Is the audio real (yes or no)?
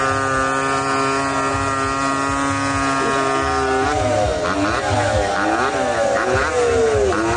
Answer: yes